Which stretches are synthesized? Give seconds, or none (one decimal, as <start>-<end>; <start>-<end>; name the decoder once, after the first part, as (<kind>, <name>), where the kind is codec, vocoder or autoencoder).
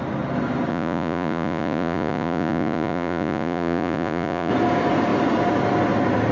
0.7-4.5 (vocoder, Vocos)